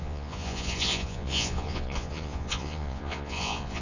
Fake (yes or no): yes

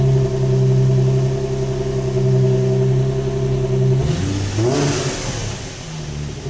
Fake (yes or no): no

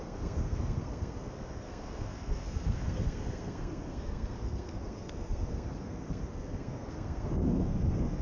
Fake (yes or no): yes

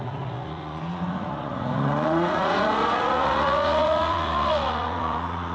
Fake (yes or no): yes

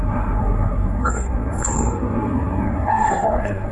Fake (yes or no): yes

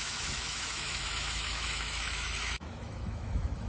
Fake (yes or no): yes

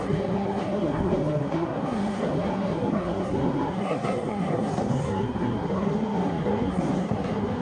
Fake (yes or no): yes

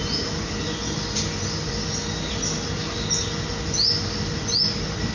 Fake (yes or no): no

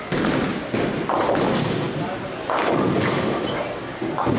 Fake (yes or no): no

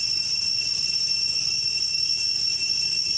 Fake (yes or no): no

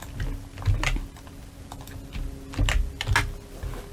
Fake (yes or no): no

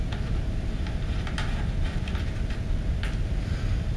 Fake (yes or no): no